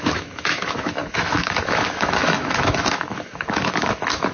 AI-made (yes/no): yes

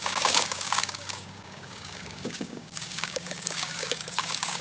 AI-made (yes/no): yes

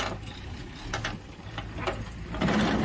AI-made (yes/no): no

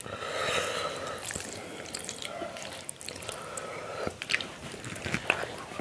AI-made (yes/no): no